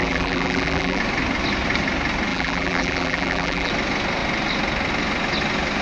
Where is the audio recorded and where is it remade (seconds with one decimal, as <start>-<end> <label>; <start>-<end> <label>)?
0.0-1.0 remade; 1.0-2.3 recorded; 2.3-3.7 remade; 3.7-5.8 recorded

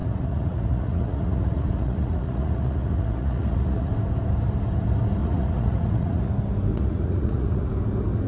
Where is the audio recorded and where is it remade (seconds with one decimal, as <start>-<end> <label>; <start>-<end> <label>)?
0.0-3.9 remade; 3.9-5.2 recorded; 5.2-6.3 remade; 6.3-6.7 recorded; 6.7-7.7 remade; 7.7-8.3 recorded

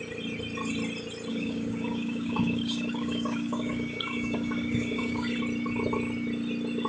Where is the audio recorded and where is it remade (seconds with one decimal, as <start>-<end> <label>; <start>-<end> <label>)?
0.0-1.3 recorded; 1.3-5.4 remade; 5.4-6.9 recorded

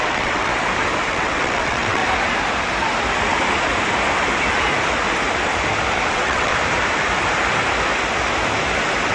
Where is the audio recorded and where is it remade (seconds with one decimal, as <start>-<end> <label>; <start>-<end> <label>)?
0.0-0.5 remade; 0.5-1.1 recorded; 1.1-2.0 remade; 2.0-6.1 recorded; 6.1-6.5 remade; 6.5-9.1 recorded